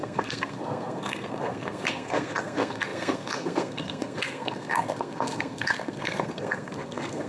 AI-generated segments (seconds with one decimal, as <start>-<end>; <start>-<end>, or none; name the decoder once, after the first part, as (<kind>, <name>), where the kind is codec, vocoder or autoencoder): 0.0-7.3 (codec, SNAC)

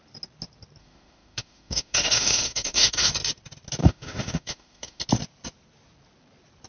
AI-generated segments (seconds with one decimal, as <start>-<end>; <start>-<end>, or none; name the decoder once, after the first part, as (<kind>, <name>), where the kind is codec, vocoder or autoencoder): 0.8-3.1 (autoencoder, DAC-VAE); 3.8-5.0